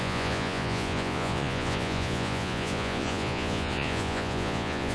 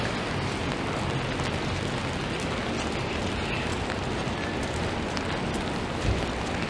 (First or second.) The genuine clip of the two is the second